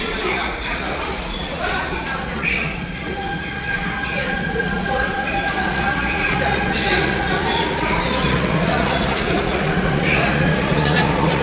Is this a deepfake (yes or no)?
yes